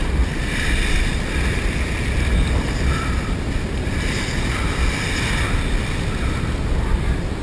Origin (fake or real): real